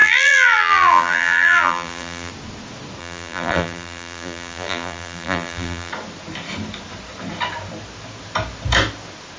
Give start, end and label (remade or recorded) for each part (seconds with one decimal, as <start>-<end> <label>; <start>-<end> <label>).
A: 0.0-2.3 remade; 2.3-3.0 recorded; 3.0-5.9 remade; 5.9-9.4 recorded